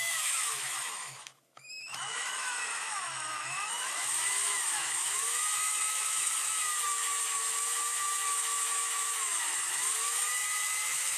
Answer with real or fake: fake